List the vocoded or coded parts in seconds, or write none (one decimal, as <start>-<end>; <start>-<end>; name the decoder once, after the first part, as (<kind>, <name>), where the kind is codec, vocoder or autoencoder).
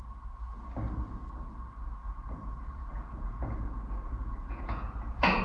2.0-5.4 (vocoder, Vocos)